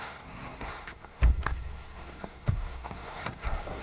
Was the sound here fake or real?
fake